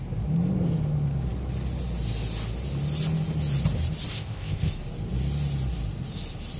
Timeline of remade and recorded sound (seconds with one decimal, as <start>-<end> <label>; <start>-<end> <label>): 0.0-4.1 recorded; 4.1-4.7 remade; 4.7-6.6 recorded